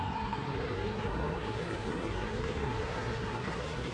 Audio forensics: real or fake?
fake